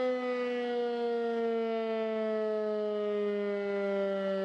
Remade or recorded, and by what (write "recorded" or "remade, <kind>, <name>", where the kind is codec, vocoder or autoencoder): recorded